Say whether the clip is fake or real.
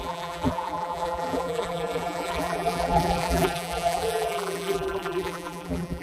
fake